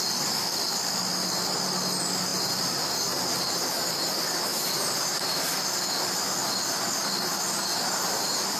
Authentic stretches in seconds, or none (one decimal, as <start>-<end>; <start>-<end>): 0.0-4.5; 5.3-7.7